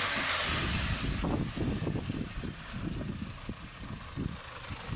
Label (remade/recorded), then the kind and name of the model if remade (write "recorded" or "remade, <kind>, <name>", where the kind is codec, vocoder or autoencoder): recorded